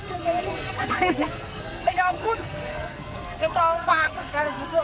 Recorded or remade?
remade